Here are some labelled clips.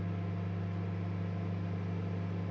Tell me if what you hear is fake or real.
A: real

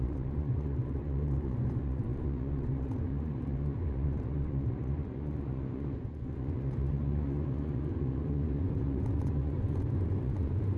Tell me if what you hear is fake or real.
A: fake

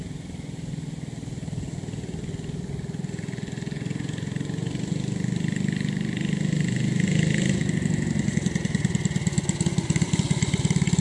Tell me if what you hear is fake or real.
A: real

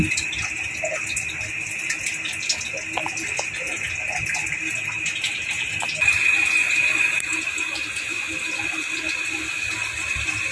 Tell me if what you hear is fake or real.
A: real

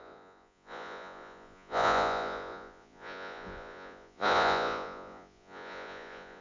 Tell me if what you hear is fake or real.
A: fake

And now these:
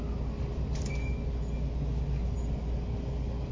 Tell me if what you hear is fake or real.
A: real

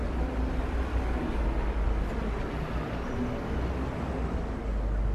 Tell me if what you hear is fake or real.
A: real